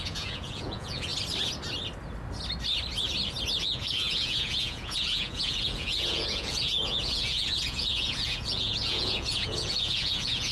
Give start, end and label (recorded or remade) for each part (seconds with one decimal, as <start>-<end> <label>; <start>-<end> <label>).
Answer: 0.0-1.1 remade; 1.1-3.6 recorded; 3.6-10.5 remade